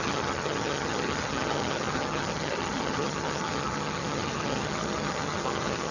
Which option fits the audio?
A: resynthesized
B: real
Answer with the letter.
A